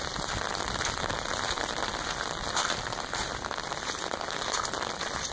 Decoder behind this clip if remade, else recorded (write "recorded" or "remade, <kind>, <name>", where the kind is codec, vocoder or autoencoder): recorded